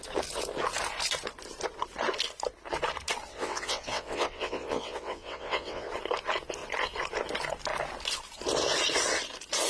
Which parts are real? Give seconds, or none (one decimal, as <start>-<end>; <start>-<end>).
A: 0.0-3.3; 5.9-9.7